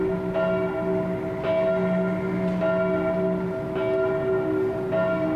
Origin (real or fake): real